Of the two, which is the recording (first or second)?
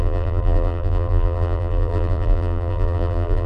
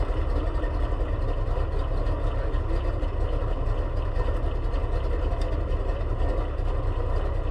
second